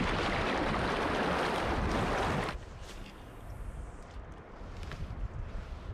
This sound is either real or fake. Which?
real